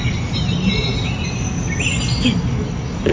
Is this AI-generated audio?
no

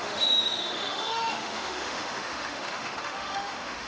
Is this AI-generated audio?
yes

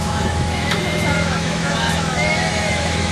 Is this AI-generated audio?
yes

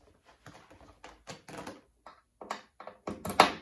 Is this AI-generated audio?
no